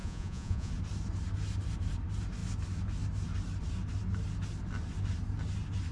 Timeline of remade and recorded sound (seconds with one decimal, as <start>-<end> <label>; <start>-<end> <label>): 0.0-0.7 remade; 0.7-5.9 recorded